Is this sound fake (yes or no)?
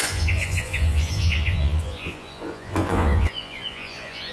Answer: yes